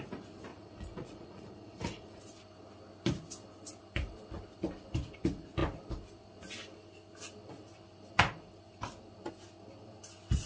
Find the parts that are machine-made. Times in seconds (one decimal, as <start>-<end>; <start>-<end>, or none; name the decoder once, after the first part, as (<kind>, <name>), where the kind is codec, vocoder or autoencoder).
0.5-2.2 (vocoder, Vocos)